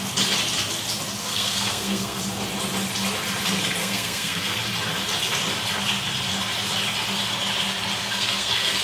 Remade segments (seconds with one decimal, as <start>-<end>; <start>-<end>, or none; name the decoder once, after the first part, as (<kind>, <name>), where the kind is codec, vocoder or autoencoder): 1.2-2.2 (codec, SNAC); 3.8-4.6; 8.0-8.8